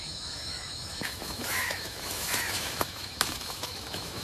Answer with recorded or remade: remade